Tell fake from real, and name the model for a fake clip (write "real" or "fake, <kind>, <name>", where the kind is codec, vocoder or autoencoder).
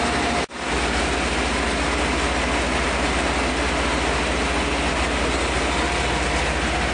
real